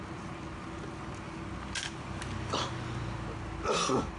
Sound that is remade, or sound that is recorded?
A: recorded